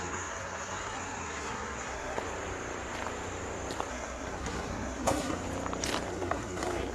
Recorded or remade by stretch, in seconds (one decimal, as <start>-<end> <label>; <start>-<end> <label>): 0.0-2.2 remade; 2.2-3.9 recorded; 3.9-5.4 remade; 5.4-6.1 recorded; 6.1-6.9 remade